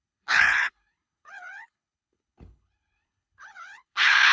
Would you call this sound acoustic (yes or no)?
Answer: no